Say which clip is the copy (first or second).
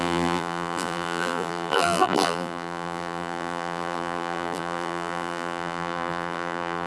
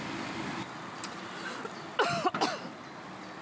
first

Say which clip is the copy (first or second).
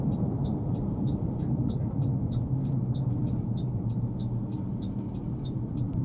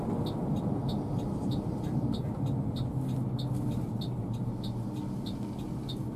first